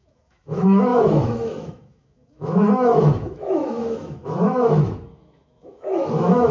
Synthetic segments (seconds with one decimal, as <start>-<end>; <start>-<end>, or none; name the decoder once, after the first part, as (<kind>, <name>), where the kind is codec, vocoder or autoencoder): 0.0-6.5 (autoencoder, DAC-VAE)